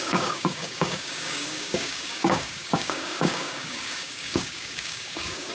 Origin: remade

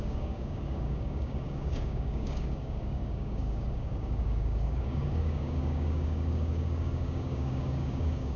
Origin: remade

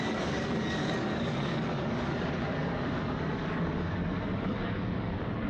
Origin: remade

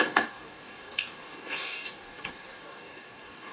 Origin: remade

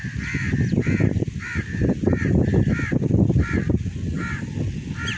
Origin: recorded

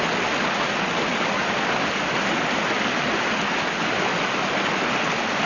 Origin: recorded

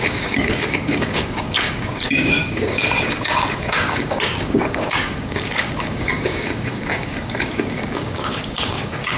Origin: remade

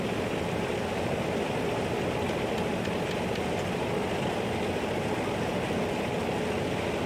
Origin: recorded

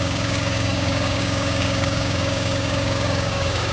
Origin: remade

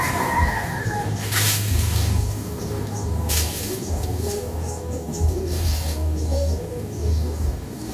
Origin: remade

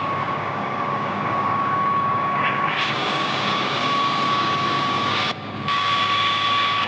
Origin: remade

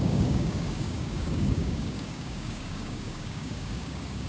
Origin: remade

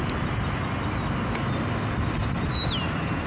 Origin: recorded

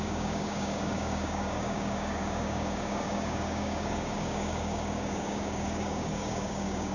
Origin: remade